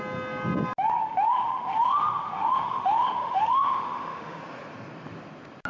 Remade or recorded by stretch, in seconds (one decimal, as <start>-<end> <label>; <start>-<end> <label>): 0.0-1.0 recorded; 1.0-4.4 remade; 4.4-5.7 recorded